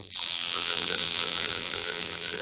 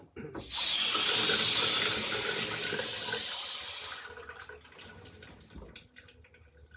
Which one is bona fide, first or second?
second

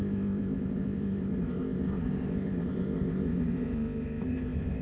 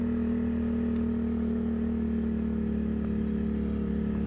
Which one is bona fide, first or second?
second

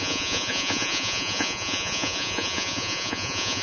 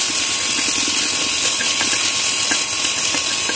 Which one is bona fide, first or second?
second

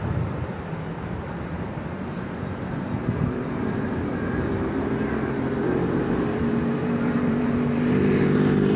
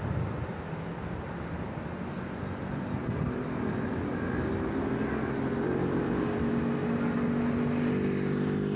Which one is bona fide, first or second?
second